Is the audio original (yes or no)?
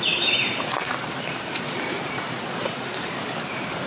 no